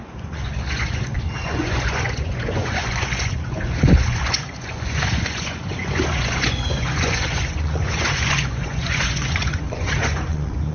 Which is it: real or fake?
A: fake